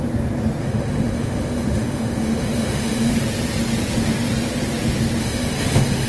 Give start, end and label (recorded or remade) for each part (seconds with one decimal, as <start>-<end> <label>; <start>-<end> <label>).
0.0-0.6 recorded; 0.6-3.1 remade; 3.1-5.2 recorded; 5.2-6.1 remade